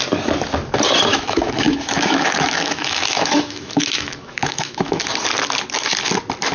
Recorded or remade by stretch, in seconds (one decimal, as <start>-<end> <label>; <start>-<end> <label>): 0.0-1.1 recorded; 1.1-5.0 remade; 5.0-6.5 recorded